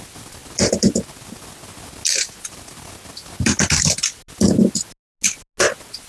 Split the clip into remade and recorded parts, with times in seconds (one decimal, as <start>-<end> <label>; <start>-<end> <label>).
0.0-6.1 recorded